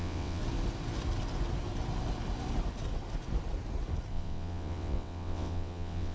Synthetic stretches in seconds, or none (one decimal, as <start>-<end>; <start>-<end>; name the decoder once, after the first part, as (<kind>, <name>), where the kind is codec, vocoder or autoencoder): 0.0-0.4 (vocoder, WaveNeXt); 4.1-6.1